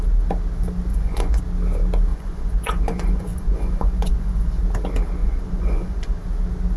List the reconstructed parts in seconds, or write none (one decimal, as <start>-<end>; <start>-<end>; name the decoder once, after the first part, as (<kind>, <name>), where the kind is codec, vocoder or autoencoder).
0.9-1.4 (vocoder, Vocos); 2.1-4.6; 5.2-6.2